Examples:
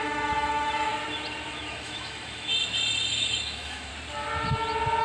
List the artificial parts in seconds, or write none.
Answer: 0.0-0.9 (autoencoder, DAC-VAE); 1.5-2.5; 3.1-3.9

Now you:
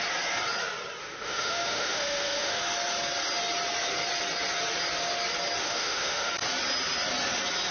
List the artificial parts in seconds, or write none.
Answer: 1.0-2.6 (autoencoder, DAC-VAE); 5.6-6.3

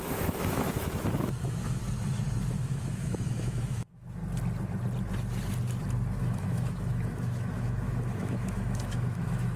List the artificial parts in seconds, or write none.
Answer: 0.0-1.8 (autoencoder, DAC-VAE); 2.5-4.2; 6.2-9.6

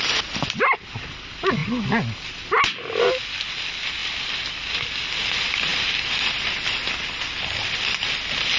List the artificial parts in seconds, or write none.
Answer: none

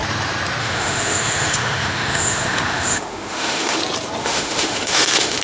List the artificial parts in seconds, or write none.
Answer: 0.6-3.8 (autoencoder, DAC-VAE); 4.2-5.4

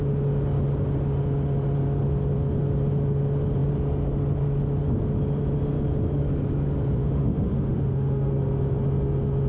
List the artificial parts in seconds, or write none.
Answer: 7.0-8.3 (autoencoder, DAC-VAE)

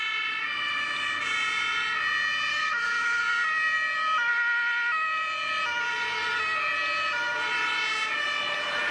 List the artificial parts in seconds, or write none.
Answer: 2.5-3.2 (autoencoder, DAC-VAE)

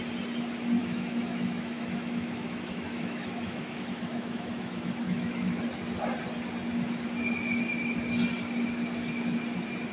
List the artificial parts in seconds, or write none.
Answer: 0.8-5.6 (autoencoder, DAC-VAE)